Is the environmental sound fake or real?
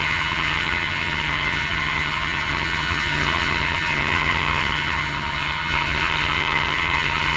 fake